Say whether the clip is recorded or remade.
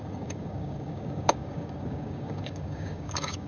remade